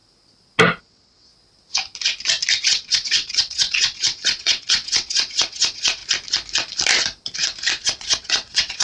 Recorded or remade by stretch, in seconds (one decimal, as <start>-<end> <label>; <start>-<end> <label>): 0.0-0.8 recorded; 0.8-1.3 remade; 1.3-2.6 recorded; 2.6-6.0 remade; 6.0-7.8 recorded; 7.8-8.8 remade